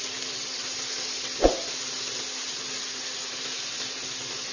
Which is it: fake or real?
real